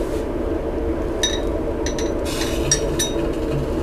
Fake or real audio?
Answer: real